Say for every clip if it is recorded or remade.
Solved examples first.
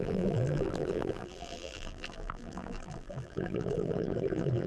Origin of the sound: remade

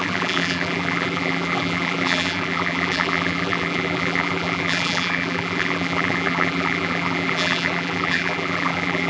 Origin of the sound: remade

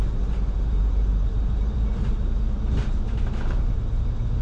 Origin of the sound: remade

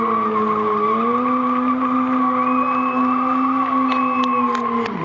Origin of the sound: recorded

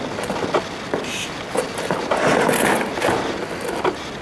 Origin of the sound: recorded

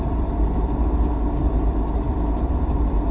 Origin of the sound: remade